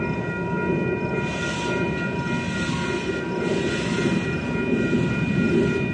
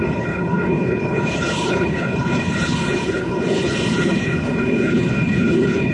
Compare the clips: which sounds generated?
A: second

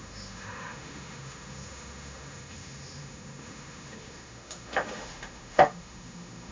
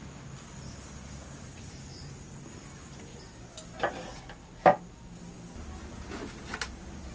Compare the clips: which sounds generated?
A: first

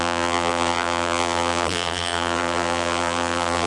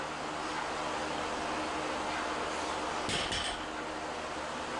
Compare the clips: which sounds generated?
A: first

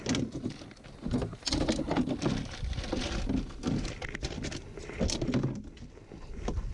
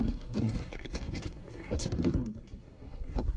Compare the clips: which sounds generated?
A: second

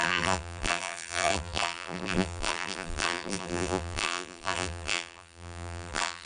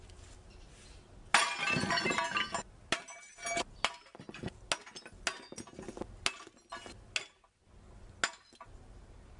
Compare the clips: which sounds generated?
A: first